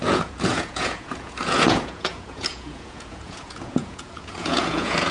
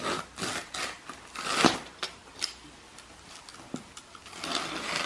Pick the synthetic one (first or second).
first